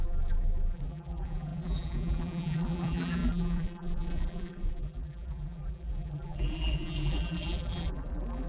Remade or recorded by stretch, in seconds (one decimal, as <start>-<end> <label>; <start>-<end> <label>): 0.0-8.5 remade